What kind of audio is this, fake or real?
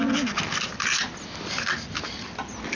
real